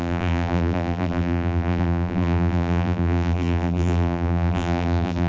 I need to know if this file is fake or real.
fake